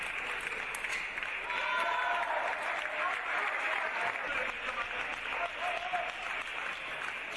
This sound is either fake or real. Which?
real